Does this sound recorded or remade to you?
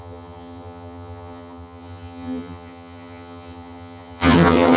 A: remade